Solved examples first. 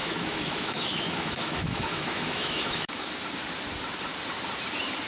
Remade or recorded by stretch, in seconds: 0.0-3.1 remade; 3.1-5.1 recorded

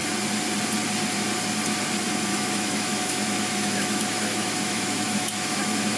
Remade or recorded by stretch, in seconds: 0.0-2.3 recorded; 2.3-6.0 remade

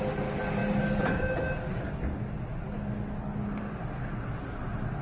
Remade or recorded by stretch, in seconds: 0.0-5.0 recorded

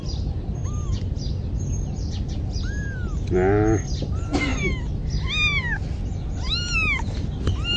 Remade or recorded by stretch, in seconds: 0.0-7.8 recorded

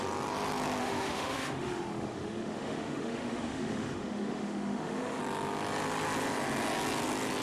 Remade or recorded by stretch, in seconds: 0.0-0.8 recorded; 0.8-5.2 remade; 5.2-7.4 recorded

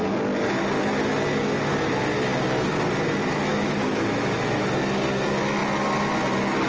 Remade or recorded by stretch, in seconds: 0.0-3.5 recorded; 3.5-4.7 remade; 4.7-6.7 recorded

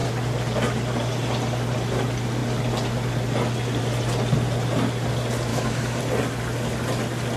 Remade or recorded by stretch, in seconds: 0.0-5.5 recorded; 5.5-6.0 remade; 6.0-7.4 recorded

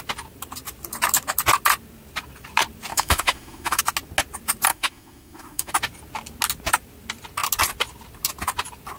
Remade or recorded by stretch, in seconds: 0.0-2.9 recorded; 2.9-3.8 remade; 3.8-4.7 recorded; 4.7-5.7 remade; 5.7-9.0 recorded